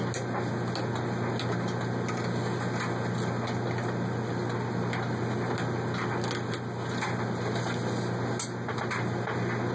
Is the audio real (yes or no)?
yes